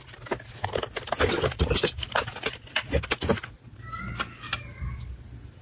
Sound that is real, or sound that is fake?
real